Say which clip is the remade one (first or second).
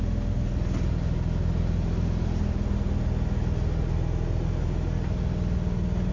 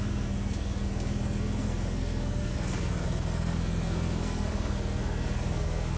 second